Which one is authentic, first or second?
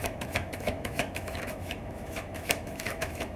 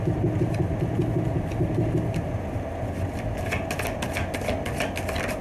second